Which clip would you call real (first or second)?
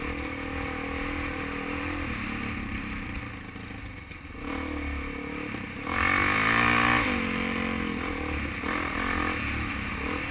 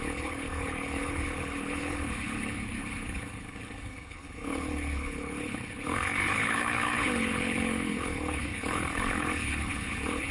first